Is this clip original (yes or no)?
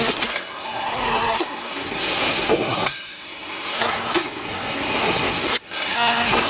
no